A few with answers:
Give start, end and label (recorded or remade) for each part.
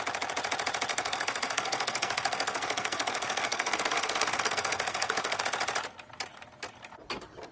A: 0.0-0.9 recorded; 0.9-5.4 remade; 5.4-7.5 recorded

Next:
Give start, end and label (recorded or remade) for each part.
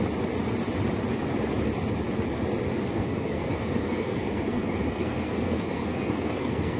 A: 0.0-2.7 recorded; 2.7-6.8 remade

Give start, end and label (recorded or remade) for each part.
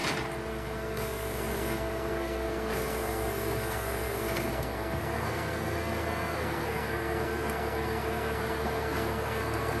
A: 0.0-0.5 recorded; 0.5-9.8 remade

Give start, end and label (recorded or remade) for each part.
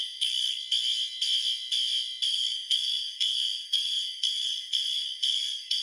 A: 0.0-0.6 remade; 0.6-2.3 recorded; 2.3-5.8 remade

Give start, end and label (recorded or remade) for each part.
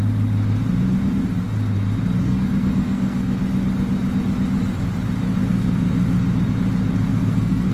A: 0.0-2.2 recorded; 2.2-3.4 remade; 3.4-5.4 recorded; 5.4-5.9 remade; 5.9-7.1 recorded; 7.1-7.7 remade